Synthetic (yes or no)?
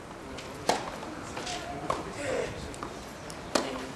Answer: yes